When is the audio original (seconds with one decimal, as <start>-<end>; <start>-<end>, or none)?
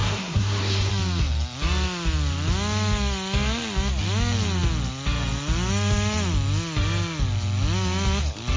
0.9-8.6